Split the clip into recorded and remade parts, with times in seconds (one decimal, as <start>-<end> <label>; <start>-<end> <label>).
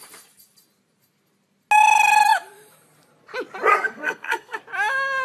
0.0-3.7 recorded; 3.7-4.6 remade; 4.6-5.2 recorded